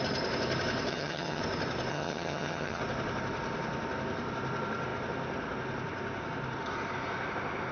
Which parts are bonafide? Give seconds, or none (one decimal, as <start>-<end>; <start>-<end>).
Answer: 0.0-0.9; 1.4-1.9; 2.8-7.7